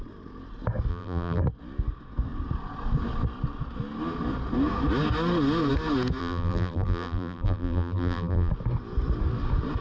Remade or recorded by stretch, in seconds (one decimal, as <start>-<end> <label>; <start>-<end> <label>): 0.0-0.9 recorded; 0.9-1.4 remade; 1.4-6.2 recorded; 6.2-8.5 remade; 8.5-9.8 recorded